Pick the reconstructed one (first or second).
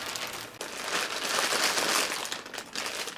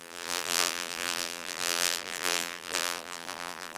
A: second